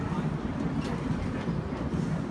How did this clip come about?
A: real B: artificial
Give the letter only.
A